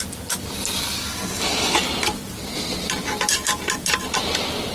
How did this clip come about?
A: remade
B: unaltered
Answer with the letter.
B